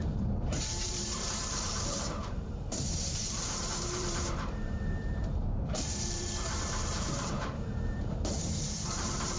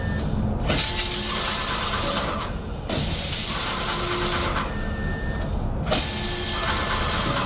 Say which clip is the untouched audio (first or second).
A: second